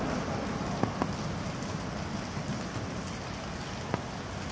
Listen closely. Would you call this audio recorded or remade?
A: recorded